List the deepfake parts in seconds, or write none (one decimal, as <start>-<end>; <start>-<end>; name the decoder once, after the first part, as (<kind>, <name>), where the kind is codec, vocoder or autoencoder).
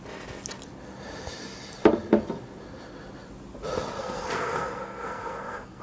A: 4.0-5.8 (codec, SNAC)